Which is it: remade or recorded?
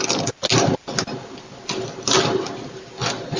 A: recorded